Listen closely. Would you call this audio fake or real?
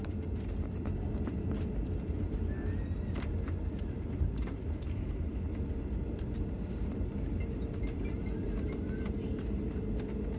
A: fake